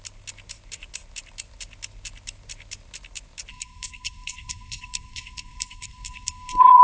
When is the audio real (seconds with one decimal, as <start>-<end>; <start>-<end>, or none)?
0.0-3.5